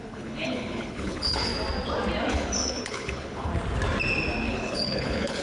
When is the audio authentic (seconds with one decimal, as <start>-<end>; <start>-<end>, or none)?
1.5-2.3; 3.5-4.5